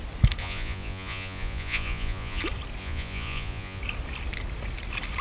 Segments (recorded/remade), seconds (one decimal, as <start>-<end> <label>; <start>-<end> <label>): 0.0-0.4 recorded; 0.4-2.4 remade; 2.4-2.8 recorded; 2.8-3.8 remade; 3.8-5.2 recorded